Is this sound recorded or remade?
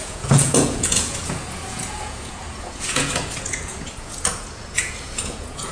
remade